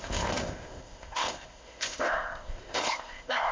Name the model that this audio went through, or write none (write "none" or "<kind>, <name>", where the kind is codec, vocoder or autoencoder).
codec, ZipCodec